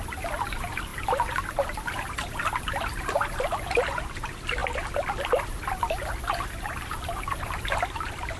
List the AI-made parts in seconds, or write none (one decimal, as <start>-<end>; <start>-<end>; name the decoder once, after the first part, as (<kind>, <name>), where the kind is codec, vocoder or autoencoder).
0.0-0.9 (vocoder, BigVGAN v2); 3.1-8.4